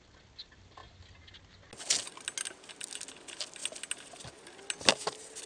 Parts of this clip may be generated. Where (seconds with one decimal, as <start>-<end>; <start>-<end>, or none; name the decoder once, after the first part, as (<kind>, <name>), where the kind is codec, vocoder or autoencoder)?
none